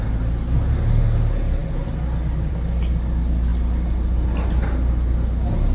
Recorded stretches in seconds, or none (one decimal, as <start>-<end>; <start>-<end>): 0.0-5.7